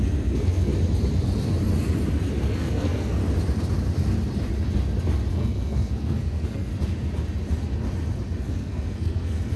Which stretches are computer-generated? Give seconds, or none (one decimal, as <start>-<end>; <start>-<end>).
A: 0.0-0.7; 2.4-3.2; 5.3-6.7; 8.4-9.6